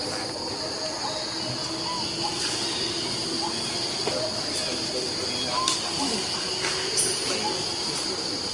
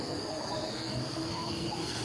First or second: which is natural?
first